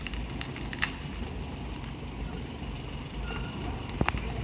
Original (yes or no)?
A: yes